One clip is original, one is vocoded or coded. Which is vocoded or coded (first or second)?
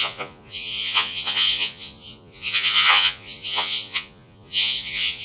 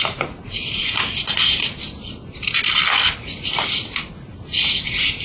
first